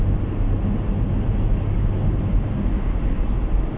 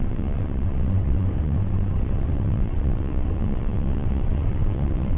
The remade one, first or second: second